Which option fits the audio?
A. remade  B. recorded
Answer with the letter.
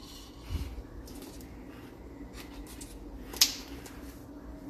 B